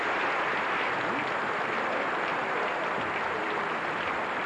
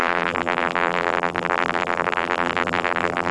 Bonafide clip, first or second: first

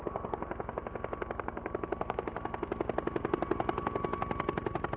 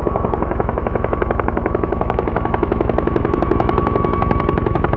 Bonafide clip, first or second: first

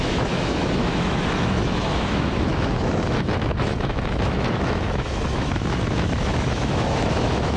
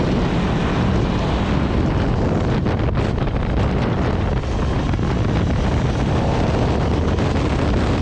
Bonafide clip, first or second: second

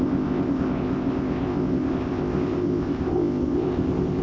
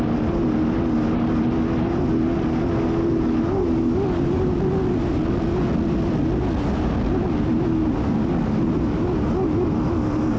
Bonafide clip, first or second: second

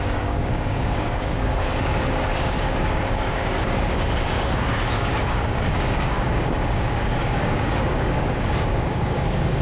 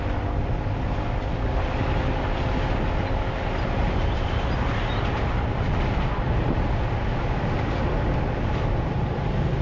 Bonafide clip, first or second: second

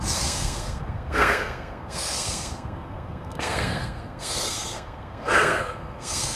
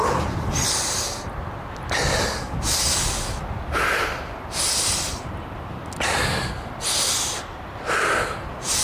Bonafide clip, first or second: second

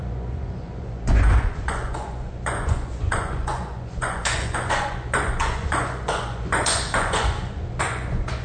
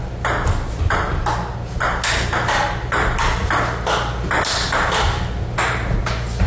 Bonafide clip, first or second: second